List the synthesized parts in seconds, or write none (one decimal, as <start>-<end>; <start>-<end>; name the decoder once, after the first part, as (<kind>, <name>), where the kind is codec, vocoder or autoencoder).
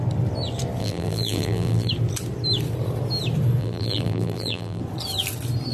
0.8-1.9 (vocoder, BigVGAN v2); 3.6-4.8